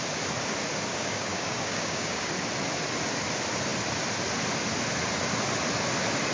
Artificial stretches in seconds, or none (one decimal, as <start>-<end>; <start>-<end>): 0.9-2.3